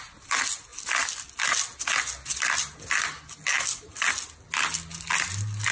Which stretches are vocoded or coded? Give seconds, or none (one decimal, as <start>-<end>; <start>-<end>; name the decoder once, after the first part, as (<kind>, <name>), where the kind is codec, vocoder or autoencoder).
none